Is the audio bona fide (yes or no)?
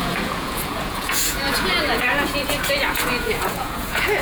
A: no